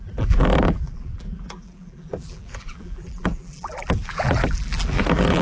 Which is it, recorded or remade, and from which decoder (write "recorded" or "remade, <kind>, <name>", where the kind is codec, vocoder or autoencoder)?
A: remade, vocoder, BigVGAN v2